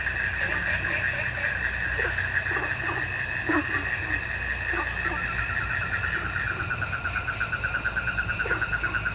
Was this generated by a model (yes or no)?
no